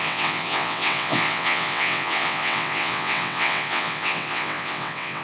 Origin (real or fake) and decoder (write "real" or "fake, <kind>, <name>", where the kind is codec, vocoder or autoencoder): fake, vocoder, WaveNeXt